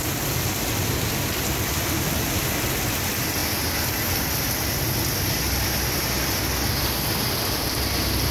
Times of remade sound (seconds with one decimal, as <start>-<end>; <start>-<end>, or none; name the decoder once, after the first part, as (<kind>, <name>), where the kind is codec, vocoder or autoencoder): none